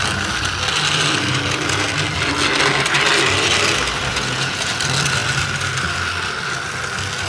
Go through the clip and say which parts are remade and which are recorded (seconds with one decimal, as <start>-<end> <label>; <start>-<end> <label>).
0.0-4.1 recorded; 4.1-4.7 remade; 4.7-7.3 recorded